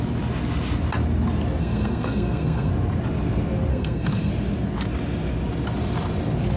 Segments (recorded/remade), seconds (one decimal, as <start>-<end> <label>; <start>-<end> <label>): 0.0-1.6 recorded; 1.6-2.7 remade; 2.7-3.7 recorded; 3.7-4.3 remade; 4.3-6.6 recorded